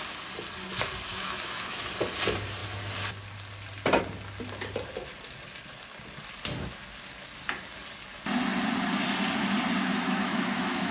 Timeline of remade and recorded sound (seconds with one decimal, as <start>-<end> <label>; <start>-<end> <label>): 0.0-1.1 recorded; 1.1-1.9 remade; 1.9-9.8 recorded; 9.8-10.9 remade